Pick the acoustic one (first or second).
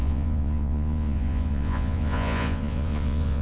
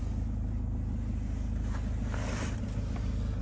second